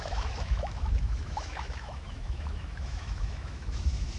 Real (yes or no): no